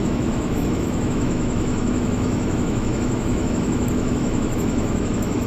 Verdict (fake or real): fake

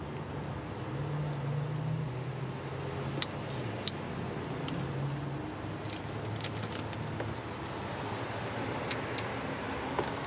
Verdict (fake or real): real